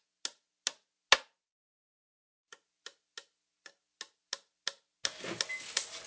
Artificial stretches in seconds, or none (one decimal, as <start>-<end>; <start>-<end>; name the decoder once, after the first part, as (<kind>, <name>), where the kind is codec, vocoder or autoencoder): none